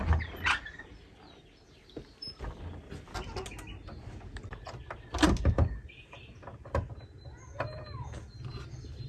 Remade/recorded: recorded